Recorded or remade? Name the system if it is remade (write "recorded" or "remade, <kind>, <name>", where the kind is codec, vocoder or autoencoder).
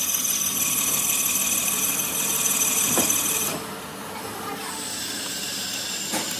recorded